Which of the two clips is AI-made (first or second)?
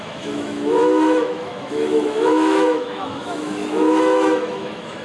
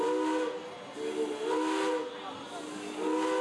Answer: first